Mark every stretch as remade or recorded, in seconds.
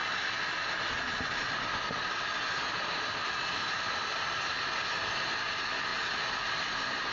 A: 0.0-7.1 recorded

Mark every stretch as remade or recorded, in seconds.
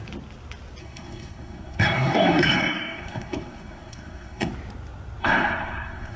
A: 0.0-0.8 recorded; 0.8-4.5 remade; 4.5-5.2 recorded; 5.2-6.2 remade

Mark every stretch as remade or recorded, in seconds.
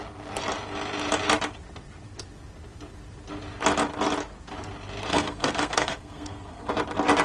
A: 0.0-5.1 recorded; 5.1-6.7 remade; 6.7-7.2 recorded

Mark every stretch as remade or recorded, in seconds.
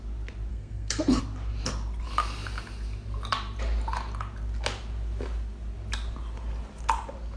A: 0.0-0.5 recorded; 0.5-1.2 remade; 1.2-7.4 recorded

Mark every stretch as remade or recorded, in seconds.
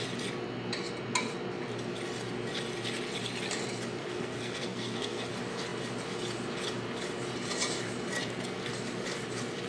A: 0.0-4.0 recorded; 4.0-5.3 remade; 5.3-9.7 recorded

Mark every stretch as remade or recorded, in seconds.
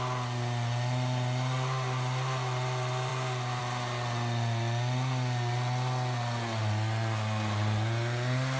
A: 0.0-8.6 recorded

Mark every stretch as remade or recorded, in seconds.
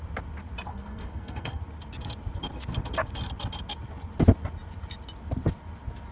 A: 0.0-0.7 recorded; 0.7-1.6 remade; 1.6-6.1 recorded